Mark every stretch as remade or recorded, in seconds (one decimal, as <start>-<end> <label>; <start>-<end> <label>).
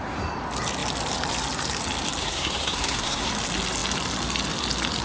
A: 0.0-2.2 recorded; 2.2-3.3 remade; 3.3-5.0 recorded